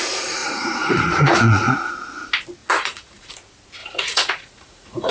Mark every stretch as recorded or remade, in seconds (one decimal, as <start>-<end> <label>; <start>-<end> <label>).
0.0-0.4 recorded; 0.4-1.9 remade; 1.9-2.6 recorded; 2.6-3.3 remade; 3.3-3.8 recorded; 3.8-5.1 remade